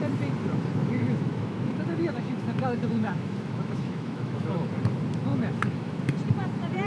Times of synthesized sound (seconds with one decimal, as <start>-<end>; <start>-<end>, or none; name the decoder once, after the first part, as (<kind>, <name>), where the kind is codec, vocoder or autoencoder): 0.8-4.7 (autoencoder, DAC-VAE); 5.3-6.0